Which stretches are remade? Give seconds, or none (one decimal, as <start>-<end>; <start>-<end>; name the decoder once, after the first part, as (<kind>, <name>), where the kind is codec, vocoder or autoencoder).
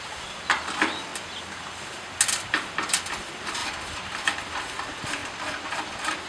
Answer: 0.0-1.1 (vocoder, BigVGAN v2); 2.3-5.2; 5.8-6.3